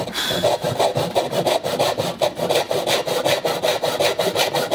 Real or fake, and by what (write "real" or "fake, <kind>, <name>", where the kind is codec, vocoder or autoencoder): real